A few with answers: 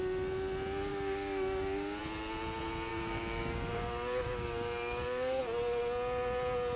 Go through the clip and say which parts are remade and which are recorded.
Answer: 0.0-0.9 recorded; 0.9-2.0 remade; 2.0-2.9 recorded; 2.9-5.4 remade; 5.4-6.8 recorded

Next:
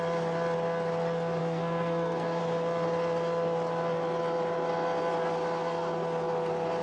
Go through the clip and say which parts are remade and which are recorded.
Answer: 0.0-1.4 recorded; 1.4-2.4 remade; 2.4-6.8 recorded